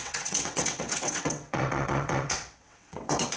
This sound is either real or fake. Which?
fake